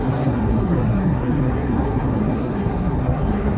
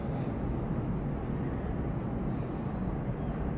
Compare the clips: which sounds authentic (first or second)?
second